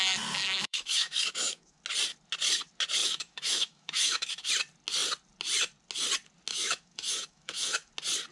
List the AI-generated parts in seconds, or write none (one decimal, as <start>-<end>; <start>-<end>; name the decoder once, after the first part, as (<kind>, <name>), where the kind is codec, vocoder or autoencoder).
0.4-1.8 (autoencoder, DAC-VAE); 3.0-4.5; 6.5-7.9

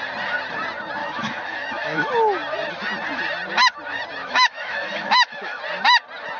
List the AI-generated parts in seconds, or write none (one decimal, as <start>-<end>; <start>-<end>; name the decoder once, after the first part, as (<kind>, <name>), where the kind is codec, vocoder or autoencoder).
1.0-2.1 (autoencoder, DAC-VAE); 4.2-5.6

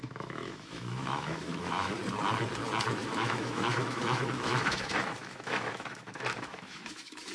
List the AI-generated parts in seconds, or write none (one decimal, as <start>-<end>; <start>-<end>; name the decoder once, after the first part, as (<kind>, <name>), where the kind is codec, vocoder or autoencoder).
0.0-2.0 (autoencoder, DAC-VAE); 3.0-7.3

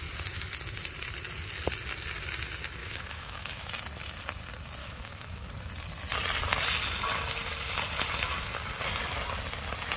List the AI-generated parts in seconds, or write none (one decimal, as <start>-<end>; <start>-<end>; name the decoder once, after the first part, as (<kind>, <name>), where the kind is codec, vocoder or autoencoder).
2.8-3.7 (autoencoder, DAC-VAE); 4.8-5.5

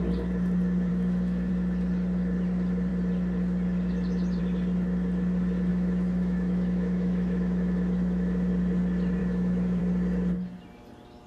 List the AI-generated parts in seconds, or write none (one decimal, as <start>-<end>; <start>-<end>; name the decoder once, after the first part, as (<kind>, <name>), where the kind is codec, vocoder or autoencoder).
0.9-1.5 (autoencoder, DAC-VAE); 5.7-8.5; 9.2-9.8